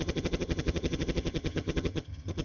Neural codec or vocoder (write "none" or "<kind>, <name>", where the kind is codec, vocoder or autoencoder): vocoder, HiFi-GAN